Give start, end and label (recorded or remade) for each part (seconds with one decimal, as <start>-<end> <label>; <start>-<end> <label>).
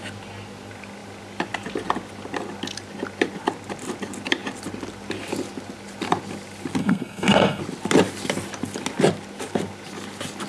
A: 0.0-6.8 recorded; 6.8-7.6 remade; 7.6-10.5 recorded